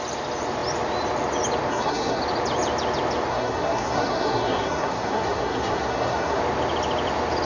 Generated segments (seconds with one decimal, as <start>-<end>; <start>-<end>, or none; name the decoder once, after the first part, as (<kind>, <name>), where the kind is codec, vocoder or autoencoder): 1.7-2.2 (codec, SNAC); 3.3-6.4